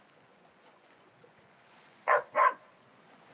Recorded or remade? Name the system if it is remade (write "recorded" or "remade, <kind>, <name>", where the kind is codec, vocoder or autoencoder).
remade, vocoder, Vocos